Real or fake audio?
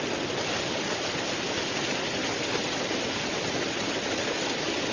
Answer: real